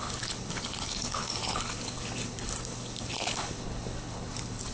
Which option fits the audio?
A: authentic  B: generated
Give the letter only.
B